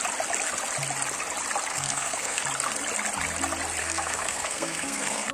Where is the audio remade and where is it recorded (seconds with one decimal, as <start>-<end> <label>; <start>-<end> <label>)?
0.0-1.7 recorded; 1.7-2.4 remade; 2.4-3.8 recorded; 3.8-5.3 remade